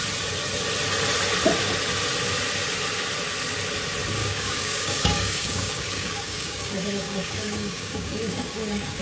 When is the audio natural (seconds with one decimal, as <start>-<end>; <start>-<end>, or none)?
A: 0.0-4.2